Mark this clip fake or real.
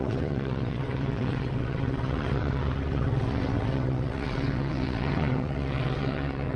fake